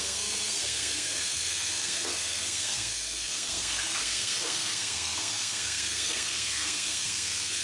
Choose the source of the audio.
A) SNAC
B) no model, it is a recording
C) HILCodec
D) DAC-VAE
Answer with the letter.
A